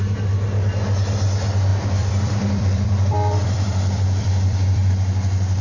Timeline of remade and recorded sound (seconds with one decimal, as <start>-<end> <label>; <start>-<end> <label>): 0.0-1.7 recorded; 1.7-4.9 remade; 4.9-5.6 recorded